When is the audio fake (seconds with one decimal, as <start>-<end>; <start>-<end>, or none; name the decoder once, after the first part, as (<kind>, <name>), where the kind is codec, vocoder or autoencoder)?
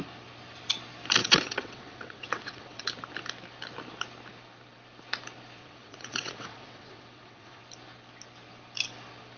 1.2-2.9 (vocoder, WaveNeXt); 5.6-7.6